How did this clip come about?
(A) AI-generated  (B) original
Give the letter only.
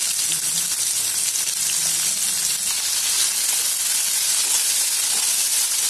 B